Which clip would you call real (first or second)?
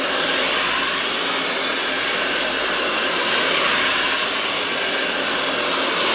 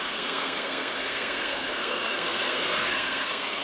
first